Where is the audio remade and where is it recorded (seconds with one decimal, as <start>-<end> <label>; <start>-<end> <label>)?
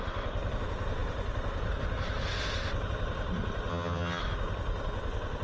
0.0-3.7 recorded; 3.7-4.2 remade; 4.2-5.4 recorded